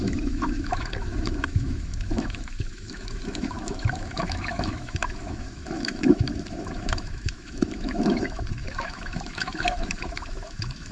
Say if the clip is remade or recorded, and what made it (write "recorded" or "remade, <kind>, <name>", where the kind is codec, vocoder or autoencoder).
remade, autoencoder, DAC-VAE